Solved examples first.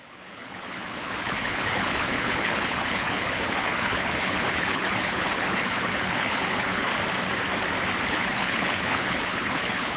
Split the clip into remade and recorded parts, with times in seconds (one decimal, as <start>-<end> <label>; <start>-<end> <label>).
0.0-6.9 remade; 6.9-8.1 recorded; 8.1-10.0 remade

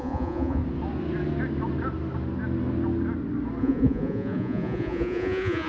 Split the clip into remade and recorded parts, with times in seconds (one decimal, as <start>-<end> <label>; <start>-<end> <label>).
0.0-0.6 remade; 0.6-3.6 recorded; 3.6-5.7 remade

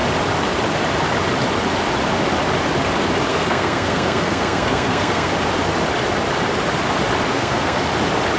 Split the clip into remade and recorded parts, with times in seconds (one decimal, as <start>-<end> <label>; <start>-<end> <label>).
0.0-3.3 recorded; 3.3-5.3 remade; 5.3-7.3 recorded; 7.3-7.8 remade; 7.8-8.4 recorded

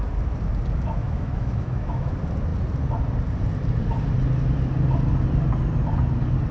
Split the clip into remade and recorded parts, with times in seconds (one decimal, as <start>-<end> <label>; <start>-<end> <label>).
0.0-1.0 recorded; 1.0-2.1 remade; 2.1-6.5 recorded

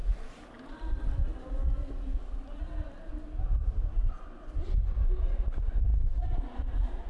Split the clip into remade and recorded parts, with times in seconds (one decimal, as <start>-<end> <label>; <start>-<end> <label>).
0.0-5.9 recorded; 5.9-7.1 remade

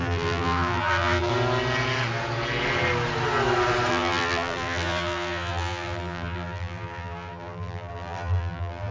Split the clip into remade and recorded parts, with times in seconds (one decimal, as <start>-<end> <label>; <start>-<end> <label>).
0.0-1.3 remade; 1.3-3.9 recorded; 3.9-8.9 remade